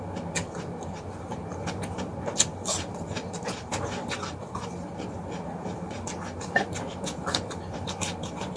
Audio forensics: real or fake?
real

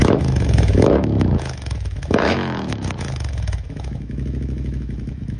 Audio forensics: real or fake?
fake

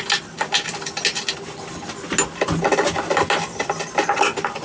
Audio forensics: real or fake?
real